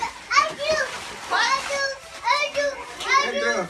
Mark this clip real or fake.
real